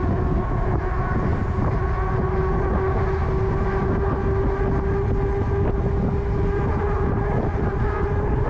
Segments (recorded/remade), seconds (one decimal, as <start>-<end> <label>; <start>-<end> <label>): 0.0-8.5 recorded